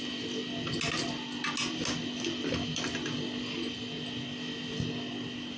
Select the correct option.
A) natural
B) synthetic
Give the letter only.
A